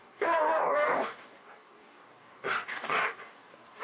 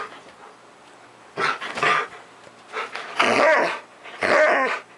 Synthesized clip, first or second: first